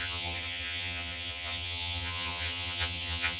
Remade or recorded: remade